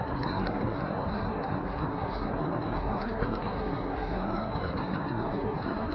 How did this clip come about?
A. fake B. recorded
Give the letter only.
A